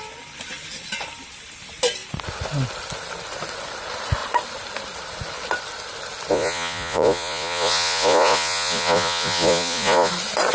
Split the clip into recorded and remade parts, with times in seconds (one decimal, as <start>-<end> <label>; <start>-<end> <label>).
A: 0.0-6.3 recorded; 6.3-10.1 remade; 10.1-10.5 recorded

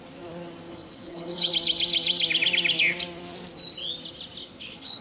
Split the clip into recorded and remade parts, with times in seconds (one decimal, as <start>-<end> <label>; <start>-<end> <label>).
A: 0.0-0.7 recorded; 0.7-1.5 remade; 1.5-4.4 recorded; 4.4-5.0 remade